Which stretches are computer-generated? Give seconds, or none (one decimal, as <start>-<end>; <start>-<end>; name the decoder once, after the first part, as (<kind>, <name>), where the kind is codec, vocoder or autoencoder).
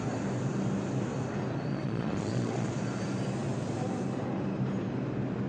1.7-2.7 (vocoder, Vocos)